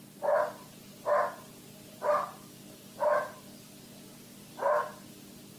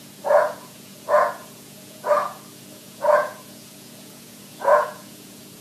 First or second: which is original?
first